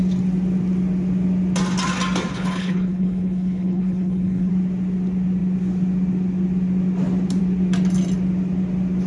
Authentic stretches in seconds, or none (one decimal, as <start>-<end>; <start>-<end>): 0.0-2.3; 4.5-9.1